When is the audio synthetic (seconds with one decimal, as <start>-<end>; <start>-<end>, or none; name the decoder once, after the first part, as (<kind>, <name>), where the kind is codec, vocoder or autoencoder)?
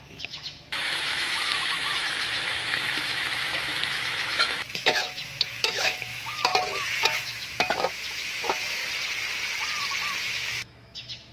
0.0-6.5 (autoencoder, DAC-VAE); 7.0-8.8; 10.2-11.3